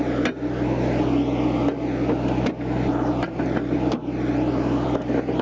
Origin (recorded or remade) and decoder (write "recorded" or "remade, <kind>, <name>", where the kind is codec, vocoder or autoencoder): recorded